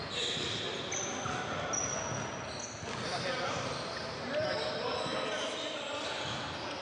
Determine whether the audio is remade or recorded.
recorded